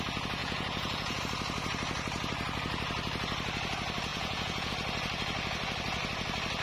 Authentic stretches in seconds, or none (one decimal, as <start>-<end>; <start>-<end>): 0.0-0.4; 1.2-4.1; 4.7-6.6